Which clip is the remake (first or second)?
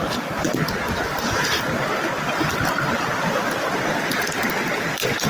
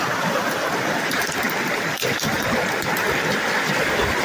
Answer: second